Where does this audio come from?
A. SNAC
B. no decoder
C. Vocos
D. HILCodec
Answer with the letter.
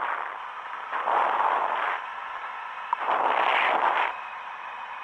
B